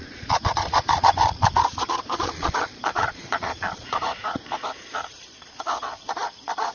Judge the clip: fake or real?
fake